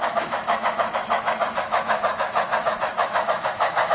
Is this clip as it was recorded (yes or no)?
no